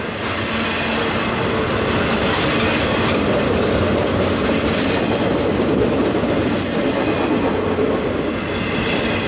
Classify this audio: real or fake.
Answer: real